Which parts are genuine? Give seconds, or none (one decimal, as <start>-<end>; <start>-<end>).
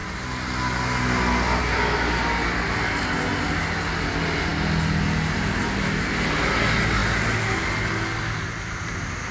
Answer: 0.0-9.3